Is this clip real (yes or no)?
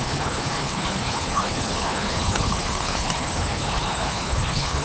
no